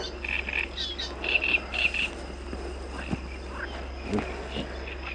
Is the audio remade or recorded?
recorded